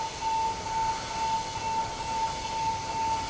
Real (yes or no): yes